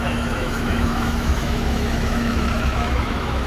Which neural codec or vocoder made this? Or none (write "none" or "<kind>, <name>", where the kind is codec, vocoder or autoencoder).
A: autoencoder, DAC-VAE